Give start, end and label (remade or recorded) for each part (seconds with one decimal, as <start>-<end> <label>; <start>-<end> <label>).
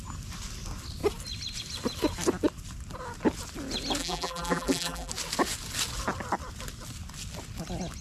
0.0-4.0 recorded; 4.0-5.1 remade; 5.1-8.0 recorded